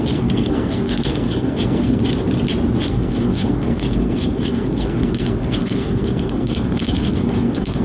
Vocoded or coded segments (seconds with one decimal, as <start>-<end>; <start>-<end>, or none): 0.0-2.0; 2.9-7.8